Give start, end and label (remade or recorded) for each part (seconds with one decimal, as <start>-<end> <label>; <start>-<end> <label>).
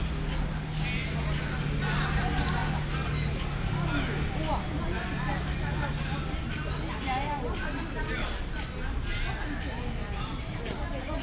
0.0-11.2 recorded